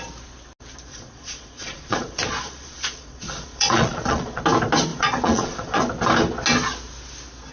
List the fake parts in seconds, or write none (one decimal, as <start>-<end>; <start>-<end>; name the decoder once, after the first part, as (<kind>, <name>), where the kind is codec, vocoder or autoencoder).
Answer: 0.9-4.4 (vocoder, Vocos); 4.9-5.8